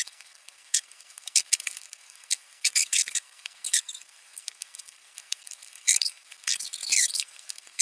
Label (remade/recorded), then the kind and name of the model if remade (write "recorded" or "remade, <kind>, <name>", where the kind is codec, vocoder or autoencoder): remade, codec, SNAC